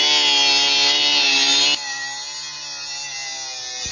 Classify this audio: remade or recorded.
recorded